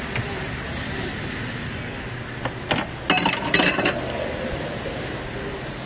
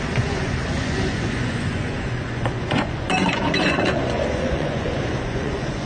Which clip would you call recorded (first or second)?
first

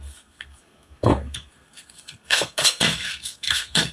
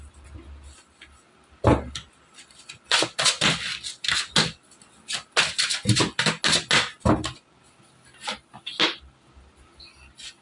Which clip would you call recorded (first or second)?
second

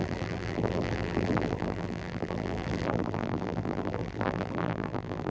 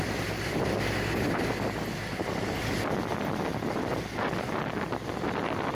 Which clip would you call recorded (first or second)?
second